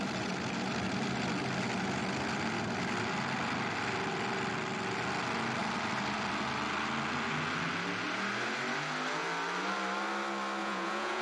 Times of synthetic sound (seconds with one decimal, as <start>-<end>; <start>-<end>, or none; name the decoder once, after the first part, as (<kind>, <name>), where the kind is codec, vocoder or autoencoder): 10.6-11.2 (vocoder, Vocos)